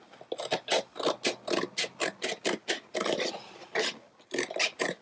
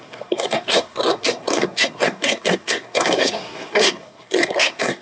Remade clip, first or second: second